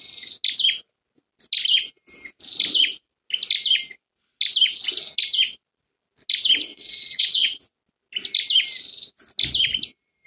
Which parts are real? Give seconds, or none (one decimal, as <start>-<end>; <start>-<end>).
0.0-6.7; 7.6-10.3